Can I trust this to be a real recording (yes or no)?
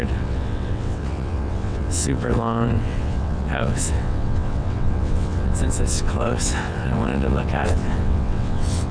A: no